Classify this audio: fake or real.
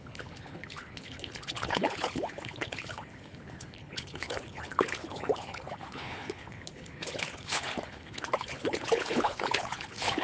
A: fake